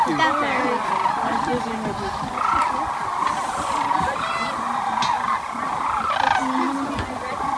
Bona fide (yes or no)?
yes